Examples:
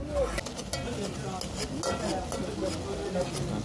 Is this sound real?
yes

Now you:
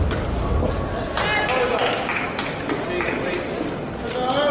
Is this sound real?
yes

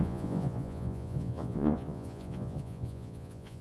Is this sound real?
no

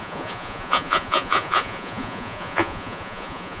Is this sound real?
no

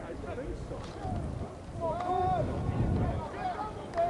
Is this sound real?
yes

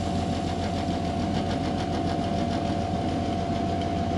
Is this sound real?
yes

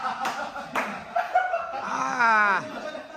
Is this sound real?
yes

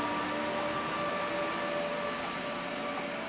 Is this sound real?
yes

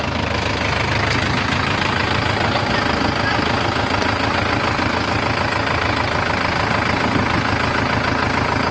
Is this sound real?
yes